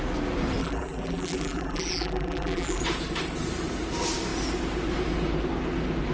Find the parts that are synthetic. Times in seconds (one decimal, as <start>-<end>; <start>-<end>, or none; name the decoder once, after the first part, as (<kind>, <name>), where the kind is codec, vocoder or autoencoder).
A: 0.6-2.8 (vocoder, BigVGAN v2)